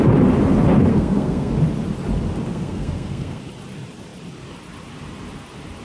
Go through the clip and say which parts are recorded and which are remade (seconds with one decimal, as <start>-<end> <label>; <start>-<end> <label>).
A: 0.0-0.9 recorded; 0.9-1.5 remade; 1.5-2.5 recorded; 2.5-3.4 remade; 3.4-5.8 recorded